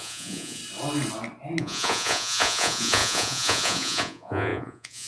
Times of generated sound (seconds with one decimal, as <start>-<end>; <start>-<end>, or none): 0.0-0.6; 1.6-5.1